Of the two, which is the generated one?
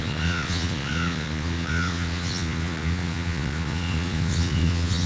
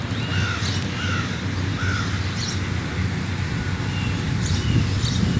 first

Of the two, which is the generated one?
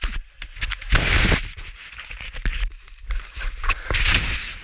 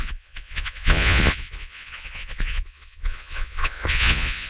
second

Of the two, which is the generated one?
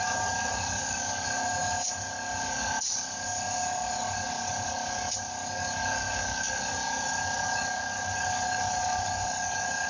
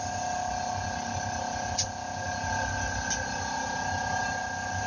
first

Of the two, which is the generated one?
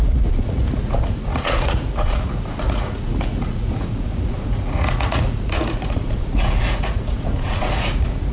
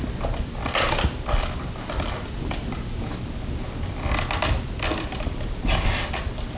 first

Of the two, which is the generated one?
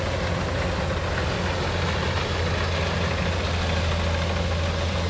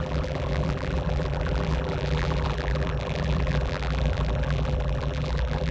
second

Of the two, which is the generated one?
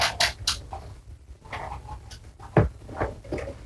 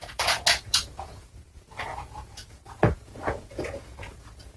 second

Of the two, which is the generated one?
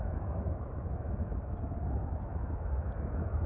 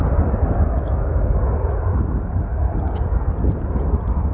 first